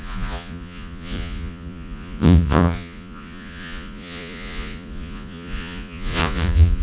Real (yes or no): no